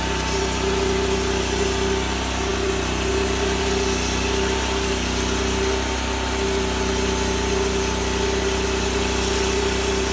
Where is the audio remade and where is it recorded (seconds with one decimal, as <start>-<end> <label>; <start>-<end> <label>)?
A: 0.0-10.1 recorded